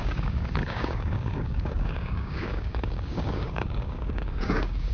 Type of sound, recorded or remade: remade